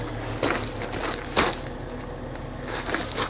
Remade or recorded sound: recorded